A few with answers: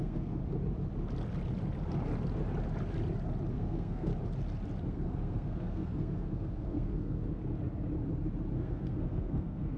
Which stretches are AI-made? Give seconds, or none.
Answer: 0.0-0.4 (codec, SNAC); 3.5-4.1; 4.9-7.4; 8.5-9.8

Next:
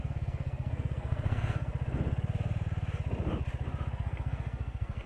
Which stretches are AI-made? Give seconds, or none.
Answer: 0.0-1.7 (codec, SNAC); 3.9-5.1